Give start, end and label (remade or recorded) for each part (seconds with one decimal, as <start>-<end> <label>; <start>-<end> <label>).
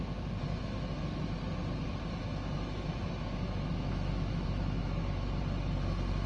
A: 0.0-0.4 recorded; 0.4-1.2 remade; 1.2-2.2 recorded; 2.2-5.4 remade; 5.4-6.3 recorded